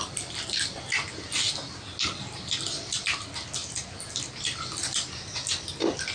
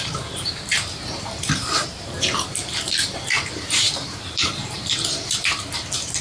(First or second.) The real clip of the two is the first